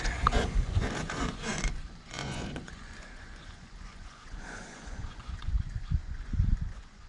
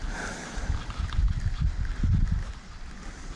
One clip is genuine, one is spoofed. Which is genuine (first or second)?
second